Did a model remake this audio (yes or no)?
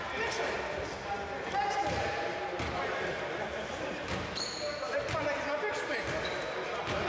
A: no